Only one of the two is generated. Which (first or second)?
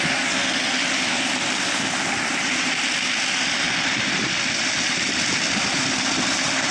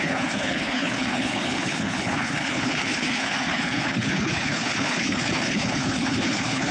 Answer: second